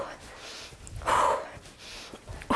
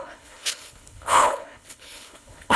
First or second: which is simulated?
second